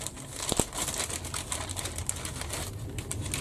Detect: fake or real real